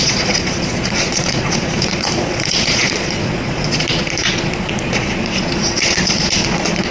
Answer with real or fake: fake